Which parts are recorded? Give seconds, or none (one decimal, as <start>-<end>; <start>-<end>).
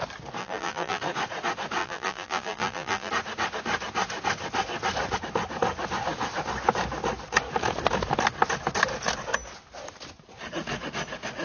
0.0-0.4; 1.0-1.8; 3.1-11.4